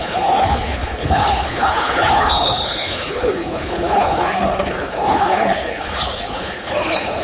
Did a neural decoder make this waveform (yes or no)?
yes